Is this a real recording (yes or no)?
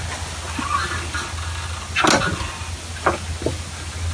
yes